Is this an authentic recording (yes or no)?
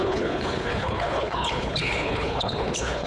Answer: no